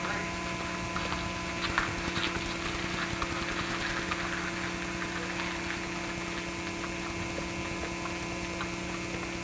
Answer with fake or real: real